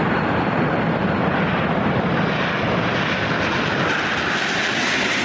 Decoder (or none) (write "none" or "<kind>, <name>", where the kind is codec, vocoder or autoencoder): none